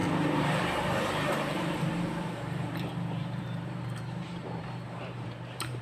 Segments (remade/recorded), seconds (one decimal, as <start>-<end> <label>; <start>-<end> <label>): 0.0-5.8 remade